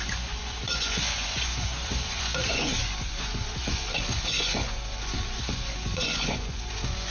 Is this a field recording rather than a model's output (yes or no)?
no